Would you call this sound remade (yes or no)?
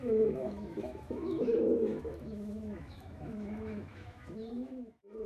yes